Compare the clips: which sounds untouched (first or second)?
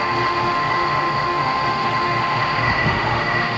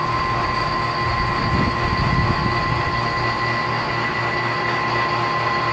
second